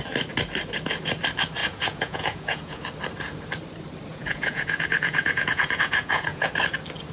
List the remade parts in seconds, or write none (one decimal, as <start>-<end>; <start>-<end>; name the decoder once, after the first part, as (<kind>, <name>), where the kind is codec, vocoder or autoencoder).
1.6-2.8 (vocoder, Vocos); 4.1-6.5